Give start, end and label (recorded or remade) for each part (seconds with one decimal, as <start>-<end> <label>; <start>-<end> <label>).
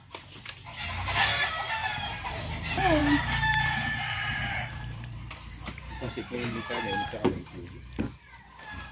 0.0-1.8 recorded; 1.8-2.4 remade; 2.4-3.0 recorded; 3.0-7.6 remade; 7.6-8.9 recorded